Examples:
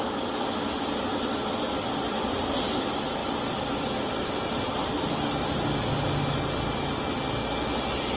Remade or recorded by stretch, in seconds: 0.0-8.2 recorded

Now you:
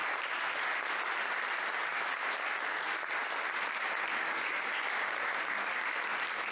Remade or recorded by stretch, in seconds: 0.0-6.5 recorded

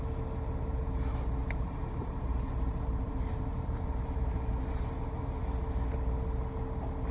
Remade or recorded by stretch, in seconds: 0.0-1.4 recorded; 1.4-5.4 remade; 5.4-7.1 recorded

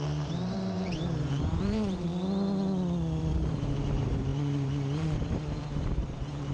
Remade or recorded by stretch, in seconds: 0.0-2.1 remade; 2.1-3.2 recorded; 3.2-6.5 remade